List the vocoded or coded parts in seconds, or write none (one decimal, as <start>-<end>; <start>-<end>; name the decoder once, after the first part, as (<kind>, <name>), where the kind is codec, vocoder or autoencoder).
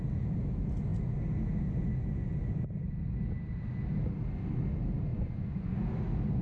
5.1-5.8 (vocoder, Vocos)